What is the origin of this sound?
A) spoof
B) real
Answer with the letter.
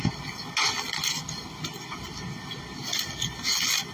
B